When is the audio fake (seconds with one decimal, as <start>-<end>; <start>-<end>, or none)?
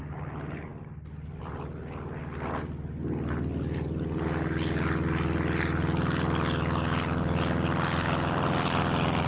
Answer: none